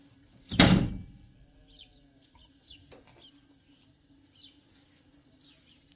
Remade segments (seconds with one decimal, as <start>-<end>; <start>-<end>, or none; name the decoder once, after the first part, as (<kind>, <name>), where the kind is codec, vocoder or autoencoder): 0.0-0.9 (vocoder, BigVGAN v2)

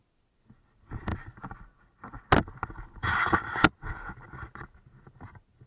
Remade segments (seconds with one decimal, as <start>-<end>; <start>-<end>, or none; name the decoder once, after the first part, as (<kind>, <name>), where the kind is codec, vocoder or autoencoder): 3.0-3.7 (vocoder, BigVGAN v2)

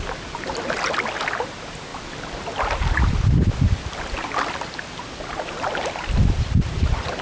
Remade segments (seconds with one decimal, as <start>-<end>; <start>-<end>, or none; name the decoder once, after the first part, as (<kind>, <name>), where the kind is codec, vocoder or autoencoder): none